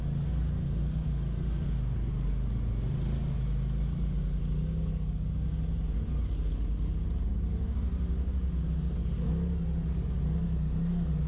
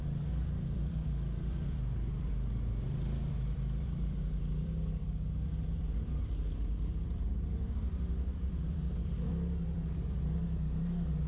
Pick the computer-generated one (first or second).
second